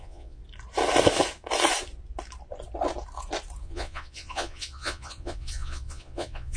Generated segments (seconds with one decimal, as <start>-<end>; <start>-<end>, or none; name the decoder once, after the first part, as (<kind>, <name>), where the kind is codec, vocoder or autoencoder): 0.0-0.4 (vocoder, Vocos); 3.6-6.6